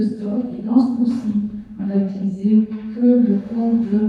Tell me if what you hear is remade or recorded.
remade